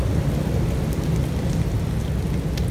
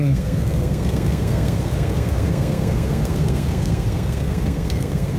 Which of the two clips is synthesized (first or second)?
second